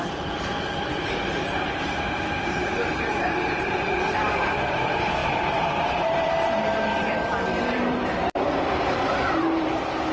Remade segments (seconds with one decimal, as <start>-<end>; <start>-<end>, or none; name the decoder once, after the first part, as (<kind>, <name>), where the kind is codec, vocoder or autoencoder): 0.0-5.2 (vocoder, BigVGAN v2); 5.8-10.1